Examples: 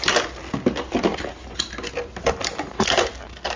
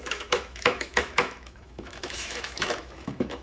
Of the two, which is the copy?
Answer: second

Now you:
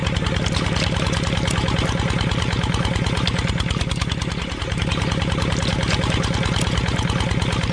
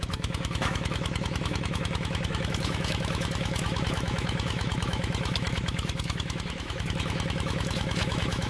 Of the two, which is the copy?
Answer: second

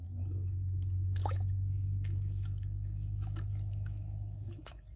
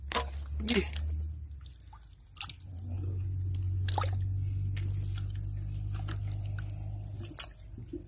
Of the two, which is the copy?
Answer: first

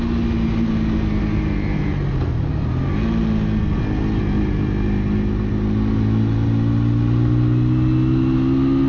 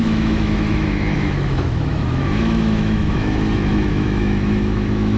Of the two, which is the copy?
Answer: second